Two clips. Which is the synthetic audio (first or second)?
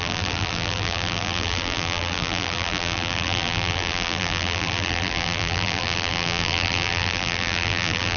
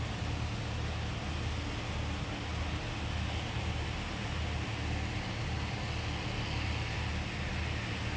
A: first